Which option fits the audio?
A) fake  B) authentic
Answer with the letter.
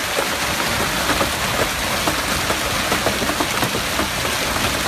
B